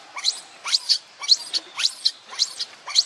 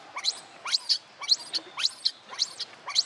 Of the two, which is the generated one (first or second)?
first